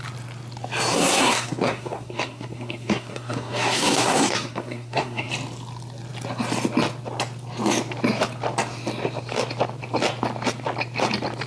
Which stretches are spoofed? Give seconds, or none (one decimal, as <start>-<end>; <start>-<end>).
0.9-5.3